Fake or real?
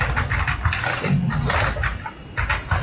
real